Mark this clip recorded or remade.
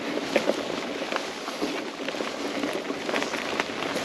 recorded